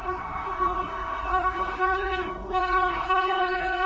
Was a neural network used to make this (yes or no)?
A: yes